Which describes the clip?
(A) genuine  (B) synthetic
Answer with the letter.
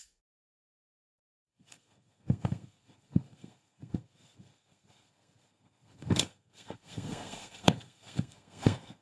B